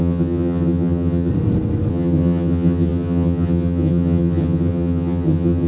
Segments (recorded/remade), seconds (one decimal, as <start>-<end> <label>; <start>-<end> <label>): 0.0-1.3 remade; 1.3-1.9 recorded; 1.9-5.7 remade